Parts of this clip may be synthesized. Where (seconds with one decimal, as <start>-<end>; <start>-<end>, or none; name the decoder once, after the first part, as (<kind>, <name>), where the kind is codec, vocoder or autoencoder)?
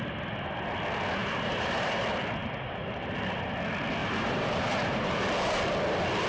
1.2-1.9 (vocoder, BigVGAN v2); 4.0-5.2